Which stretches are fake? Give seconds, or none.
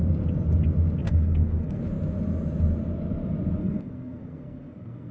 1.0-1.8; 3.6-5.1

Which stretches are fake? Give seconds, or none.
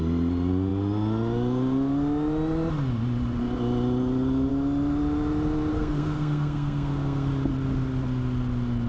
5.7-7.3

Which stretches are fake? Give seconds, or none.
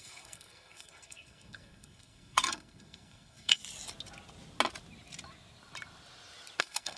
0.0-3.6; 6.6-7.0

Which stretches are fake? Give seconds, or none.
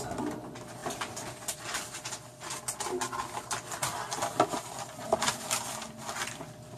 none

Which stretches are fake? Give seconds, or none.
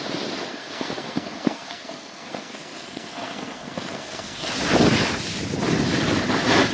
0.5-4.5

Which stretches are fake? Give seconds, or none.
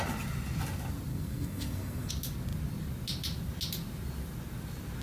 1.1-2.1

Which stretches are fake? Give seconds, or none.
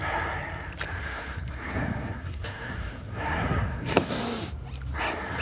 1.0-4.2